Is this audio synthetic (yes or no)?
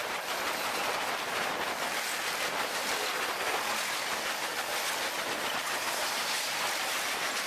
no